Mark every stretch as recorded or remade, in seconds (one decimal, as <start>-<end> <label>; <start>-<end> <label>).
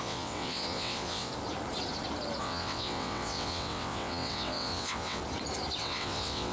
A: 0.0-1.3 remade; 1.3-2.4 recorded; 2.4-5.2 remade; 5.2-5.8 recorded; 5.8-6.5 remade